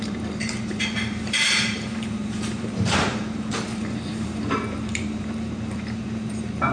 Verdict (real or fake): fake